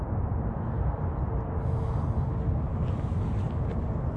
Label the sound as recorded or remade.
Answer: recorded